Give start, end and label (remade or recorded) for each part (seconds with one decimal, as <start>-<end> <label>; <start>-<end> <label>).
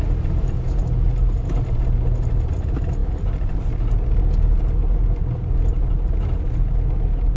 0.0-7.4 recorded